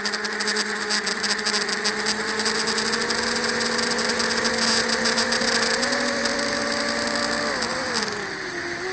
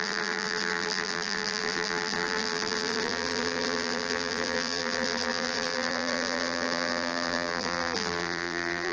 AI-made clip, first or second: second